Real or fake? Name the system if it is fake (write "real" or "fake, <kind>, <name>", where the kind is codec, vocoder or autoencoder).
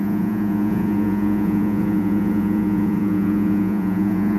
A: fake, vocoder, Vocos